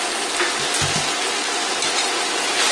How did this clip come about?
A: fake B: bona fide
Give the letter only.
B